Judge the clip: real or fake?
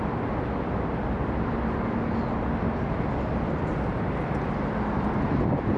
real